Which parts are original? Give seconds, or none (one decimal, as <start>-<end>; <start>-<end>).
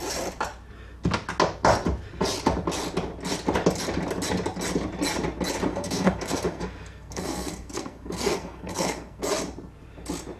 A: 0.0-5.7; 9.2-10.4